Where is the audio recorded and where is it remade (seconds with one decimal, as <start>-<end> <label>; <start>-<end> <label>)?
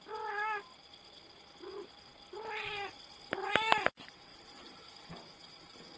0.0-4.3 recorded; 4.3-5.1 remade; 5.1-6.0 recorded